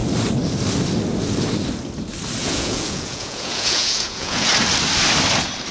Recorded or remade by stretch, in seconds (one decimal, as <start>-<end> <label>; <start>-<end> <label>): 0.0-2.4 recorded; 2.4-4.5 remade; 4.5-5.7 recorded